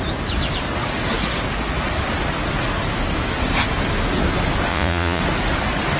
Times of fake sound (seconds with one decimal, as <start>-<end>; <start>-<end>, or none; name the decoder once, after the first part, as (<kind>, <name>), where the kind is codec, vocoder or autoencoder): 4.7-5.2 (vocoder, Vocos)